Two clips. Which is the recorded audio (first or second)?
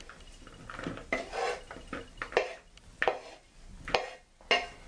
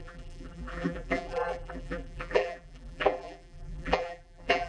first